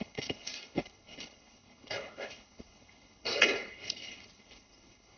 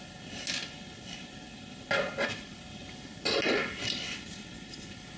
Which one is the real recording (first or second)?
second